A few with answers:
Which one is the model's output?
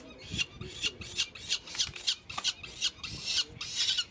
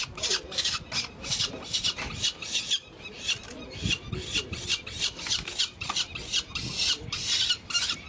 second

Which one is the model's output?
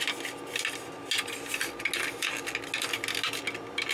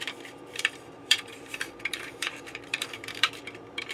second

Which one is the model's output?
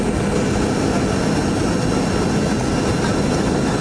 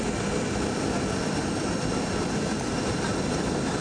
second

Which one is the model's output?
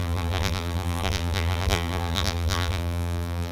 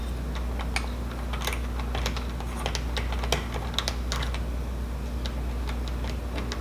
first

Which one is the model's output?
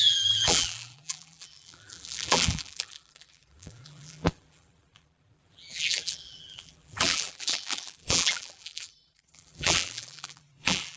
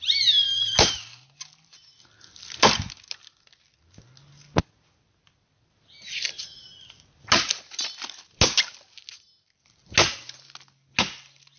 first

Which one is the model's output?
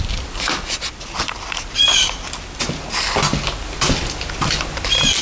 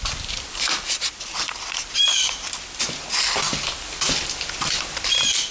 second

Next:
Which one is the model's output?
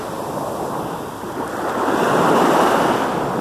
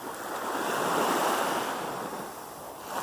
second